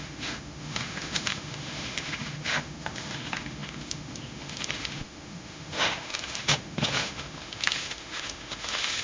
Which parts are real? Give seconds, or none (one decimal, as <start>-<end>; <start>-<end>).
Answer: none